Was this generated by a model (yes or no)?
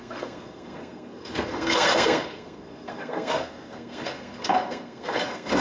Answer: yes